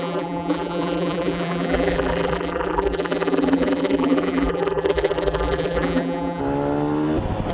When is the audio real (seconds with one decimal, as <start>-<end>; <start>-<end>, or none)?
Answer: 6.4-7.5